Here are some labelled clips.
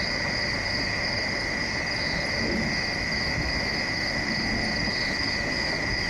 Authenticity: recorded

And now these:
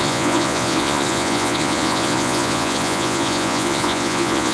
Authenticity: remade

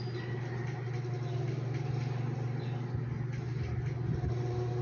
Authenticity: recorded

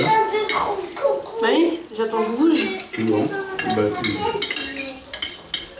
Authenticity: recorded